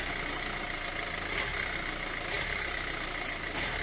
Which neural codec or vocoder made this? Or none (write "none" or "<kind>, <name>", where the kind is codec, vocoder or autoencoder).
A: none